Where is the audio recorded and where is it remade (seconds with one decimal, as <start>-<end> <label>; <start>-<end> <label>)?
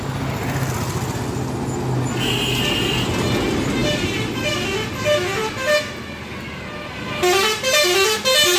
0.0-8.6 recorded